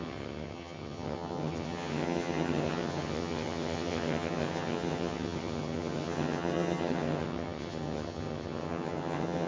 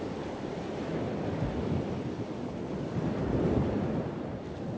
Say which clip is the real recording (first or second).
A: second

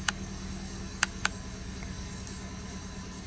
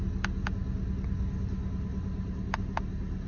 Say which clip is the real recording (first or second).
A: second